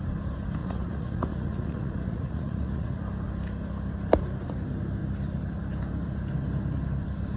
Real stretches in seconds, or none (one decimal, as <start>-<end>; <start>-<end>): 0.0-0.6; 3.0-7.4